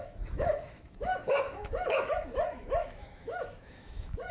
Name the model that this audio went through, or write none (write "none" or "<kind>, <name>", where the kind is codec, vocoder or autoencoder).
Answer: autoencoder, DAC-VAE